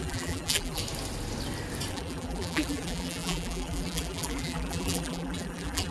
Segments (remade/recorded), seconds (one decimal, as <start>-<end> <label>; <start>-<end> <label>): 0.0-0.8 remade; 0.8-1.9 recorded; 1.9-5.9 remade